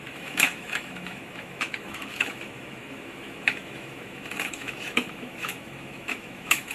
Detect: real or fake fake